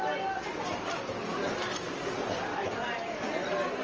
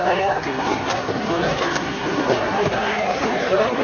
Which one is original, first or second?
first